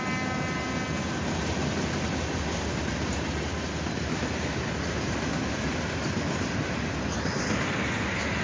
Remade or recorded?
recorded